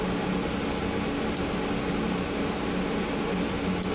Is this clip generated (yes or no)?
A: no